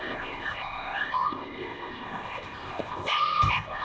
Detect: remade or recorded remade